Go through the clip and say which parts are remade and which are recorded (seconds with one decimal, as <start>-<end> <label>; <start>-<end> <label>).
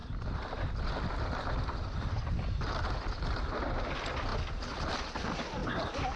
0.0-3.5 remade; 3.5-6.2 recorded